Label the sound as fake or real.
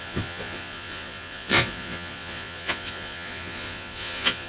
fake